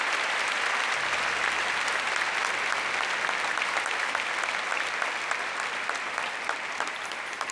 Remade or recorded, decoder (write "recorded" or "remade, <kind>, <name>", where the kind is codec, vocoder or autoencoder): recorded